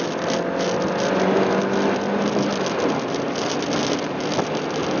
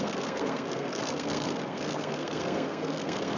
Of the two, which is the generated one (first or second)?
second